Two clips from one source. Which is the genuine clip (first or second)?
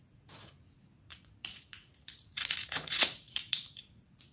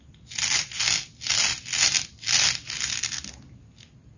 second